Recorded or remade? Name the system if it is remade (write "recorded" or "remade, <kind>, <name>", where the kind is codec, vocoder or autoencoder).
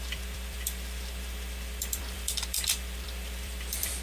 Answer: remade, vocoder, BigVGAN v2